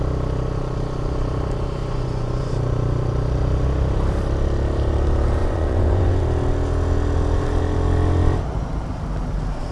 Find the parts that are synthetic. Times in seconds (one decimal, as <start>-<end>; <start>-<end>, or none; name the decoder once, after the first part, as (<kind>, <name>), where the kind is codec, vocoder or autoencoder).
1.8-2.5 (vocoder, Vocos); 5.4-6.2